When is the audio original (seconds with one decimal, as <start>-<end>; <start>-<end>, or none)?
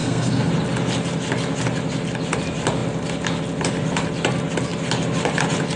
0.5-5.8